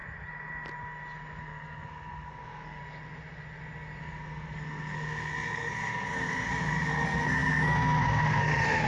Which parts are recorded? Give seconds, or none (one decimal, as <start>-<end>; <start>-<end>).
0.0-1.4; 2.8-4.0